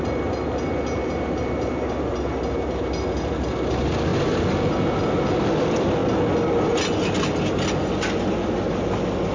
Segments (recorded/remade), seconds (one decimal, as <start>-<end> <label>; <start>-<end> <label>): 0.0-9.3 recorded